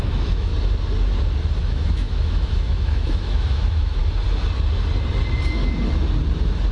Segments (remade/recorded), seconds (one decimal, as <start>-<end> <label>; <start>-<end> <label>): 0.0-0.5 remade; 0.5-1.6 recorded; 1.6-4.0 remade; 4.0-6.7 recorded

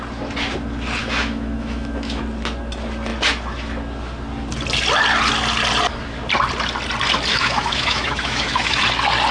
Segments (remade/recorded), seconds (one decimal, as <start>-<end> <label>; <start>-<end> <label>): 0.0-1.0 recorded; 1.0-2.2 remade; 2.2-7.3 recorded; 7.3-8.8 remade; 8.8-9.3 recorded

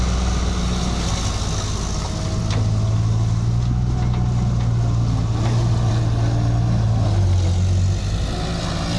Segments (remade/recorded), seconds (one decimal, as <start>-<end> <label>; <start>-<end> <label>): 0.0-9.0 recorded

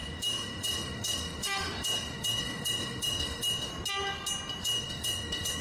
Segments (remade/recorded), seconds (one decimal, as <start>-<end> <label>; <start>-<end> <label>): 0.0-3.7 remade; 3.7-4.6 recorded; 4.6-5.6 remade

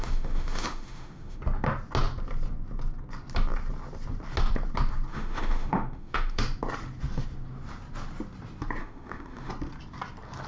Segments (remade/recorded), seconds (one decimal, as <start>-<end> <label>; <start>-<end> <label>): 0.0-1.4 remade; 1.4-5.1 recorded; 5.1-6.4 remade; 6.4-8.8 recorded; 8.8-9.5 remade; 9.5-10.5 recorded

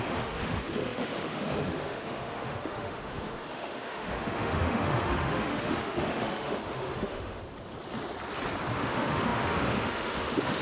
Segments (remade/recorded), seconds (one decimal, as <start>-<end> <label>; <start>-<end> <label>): 0.0-7.4 remade; 7.4-8.7 recorded; 8.7-10.6 remade

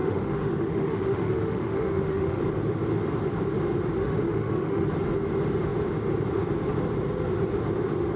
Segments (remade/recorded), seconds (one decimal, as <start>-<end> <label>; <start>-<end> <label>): 0.0-2.4 remade; 2.4-4.0 recorded; 4.0-4.9 remade; 4.9-8.2 recorded